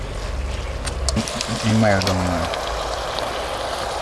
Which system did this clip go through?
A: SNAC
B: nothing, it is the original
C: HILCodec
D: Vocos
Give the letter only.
B